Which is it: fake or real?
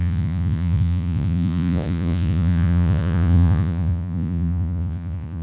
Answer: fake